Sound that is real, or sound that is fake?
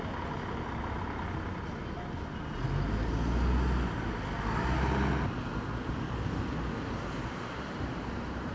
real